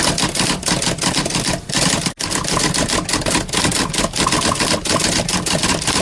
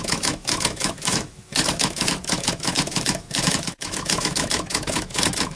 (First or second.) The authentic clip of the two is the first